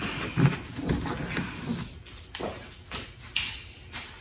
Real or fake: real